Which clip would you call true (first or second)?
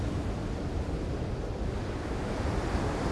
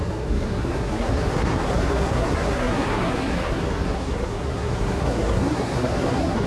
first